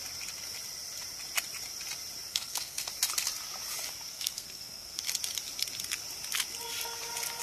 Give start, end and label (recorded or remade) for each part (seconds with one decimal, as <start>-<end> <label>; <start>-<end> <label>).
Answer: 0.0-2.3 recorded; 2.3-2.9 remade; 2.9-4.1 recorded; 4.1-5.0 remade; 5.0-7.4 recorded